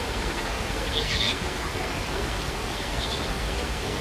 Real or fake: fake